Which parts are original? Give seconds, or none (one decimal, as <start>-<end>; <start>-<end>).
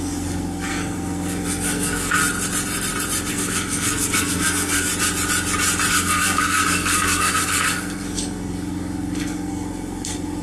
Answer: 2.2-3.3; 4.9-5.9